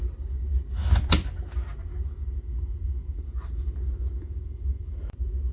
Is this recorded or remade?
recorded